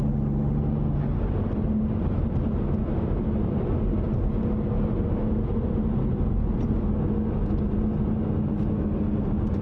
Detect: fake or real real